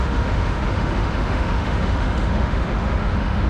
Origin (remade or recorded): remade